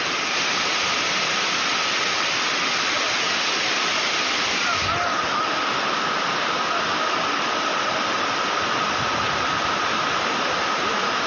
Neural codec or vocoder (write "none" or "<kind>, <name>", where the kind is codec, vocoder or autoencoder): none